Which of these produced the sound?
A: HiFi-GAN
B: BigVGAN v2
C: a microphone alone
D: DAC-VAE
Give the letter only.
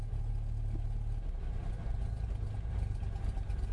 C